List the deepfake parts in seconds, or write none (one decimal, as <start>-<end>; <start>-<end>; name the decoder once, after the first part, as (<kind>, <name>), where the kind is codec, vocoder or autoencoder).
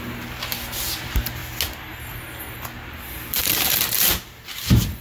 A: 3.4-4.4 (vocoder, BigVGAN v2)